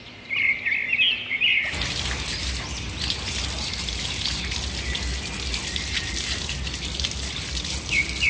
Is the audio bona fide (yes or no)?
yes